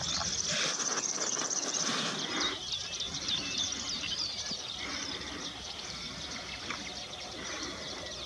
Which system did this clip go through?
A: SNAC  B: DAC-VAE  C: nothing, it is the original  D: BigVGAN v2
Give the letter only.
D